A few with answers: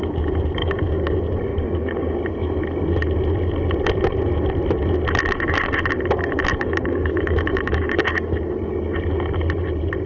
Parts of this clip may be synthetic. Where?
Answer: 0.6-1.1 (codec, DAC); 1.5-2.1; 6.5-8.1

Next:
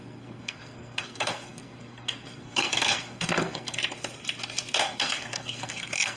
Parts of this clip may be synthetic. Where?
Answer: 0.0-3.8 (codec, SNAC); 4.8-6.2

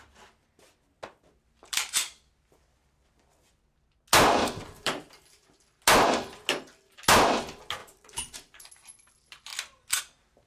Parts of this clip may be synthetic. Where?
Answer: 1.4-2.3 (vocoder, BigVGAN v2); 4.4-5.8; 7.8-8.7